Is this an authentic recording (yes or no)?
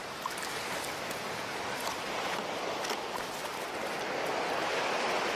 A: yes